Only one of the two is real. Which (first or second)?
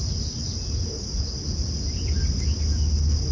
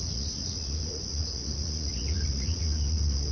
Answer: first